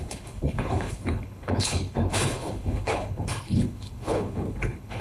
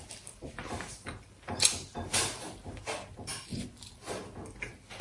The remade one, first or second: first